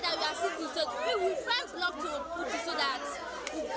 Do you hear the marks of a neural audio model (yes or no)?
no